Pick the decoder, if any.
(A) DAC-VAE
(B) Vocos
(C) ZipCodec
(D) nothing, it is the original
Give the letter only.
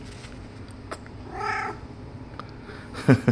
D